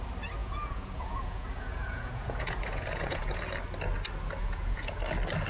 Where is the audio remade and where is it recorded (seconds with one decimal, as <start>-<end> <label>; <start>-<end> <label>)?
0.0-0.4 recorded; 0.4-3.4 remade; 3.4-4.4 recorded; 4.4-5.0 remade; 5.0-5.5 recorded